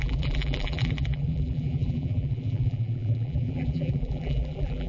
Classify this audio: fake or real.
fake